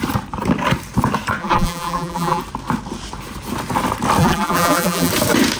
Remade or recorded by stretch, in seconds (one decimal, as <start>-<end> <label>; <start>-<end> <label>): 0.0-1.4 recorded; 1.4-2.4 remade; 2.4-4.2 recorded; 4.2-5.1 remade; 5.1-5.6 recorded